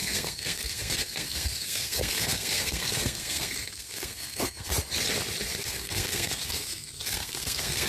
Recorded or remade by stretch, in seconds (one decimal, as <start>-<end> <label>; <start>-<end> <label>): 0.0-4.7 remade; 4.7-5.6 recorded; 5.6-7.9 remade